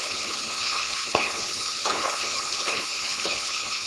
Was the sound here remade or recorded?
remade